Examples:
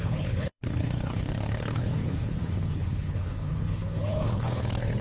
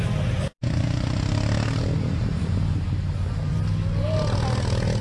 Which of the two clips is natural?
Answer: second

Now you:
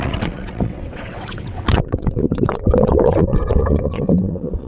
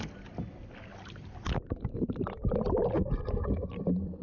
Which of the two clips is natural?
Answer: second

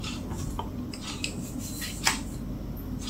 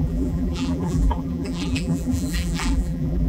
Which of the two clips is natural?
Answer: first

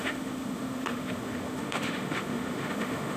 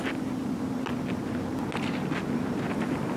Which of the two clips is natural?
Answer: second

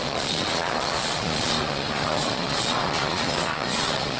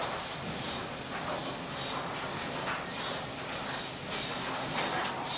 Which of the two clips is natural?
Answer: second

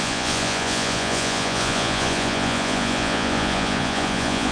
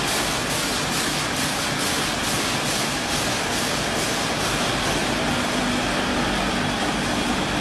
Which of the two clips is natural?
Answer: second